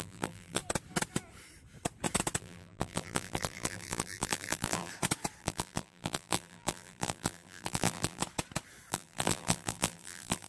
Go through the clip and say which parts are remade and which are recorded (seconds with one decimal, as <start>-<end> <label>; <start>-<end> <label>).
0.0-0.6 remade; 0.6-2.4 recorded; 2.4-4.9 remade; 4.9-5.4 recorded; 5.4-8.2 remade; 8.2-8.9 recorded; 8.9-10.5 remade